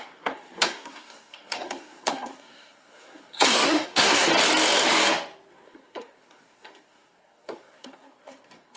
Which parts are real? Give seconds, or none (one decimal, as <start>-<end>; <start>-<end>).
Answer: 4.3-5.5